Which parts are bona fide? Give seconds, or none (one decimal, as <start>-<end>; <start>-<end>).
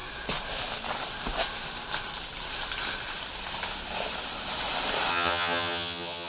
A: 0.0-5.1